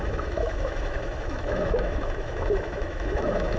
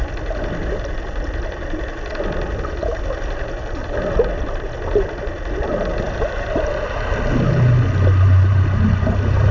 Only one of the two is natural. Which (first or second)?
second